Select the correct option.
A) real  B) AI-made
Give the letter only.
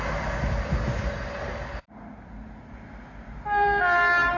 A